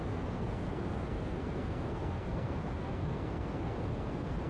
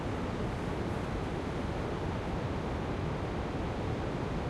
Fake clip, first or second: first